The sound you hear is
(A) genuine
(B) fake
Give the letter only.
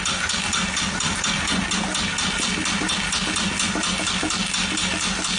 A